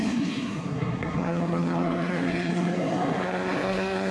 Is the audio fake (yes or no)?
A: yes